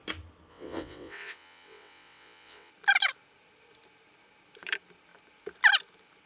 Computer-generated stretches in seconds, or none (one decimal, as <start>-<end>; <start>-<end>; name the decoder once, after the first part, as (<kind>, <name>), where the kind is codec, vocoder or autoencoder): 0.5-2.7 (vocoder, WaveNeXt)